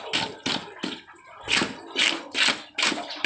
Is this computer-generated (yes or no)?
no